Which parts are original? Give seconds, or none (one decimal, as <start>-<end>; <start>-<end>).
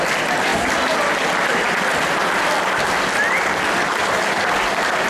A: 0.0-5.1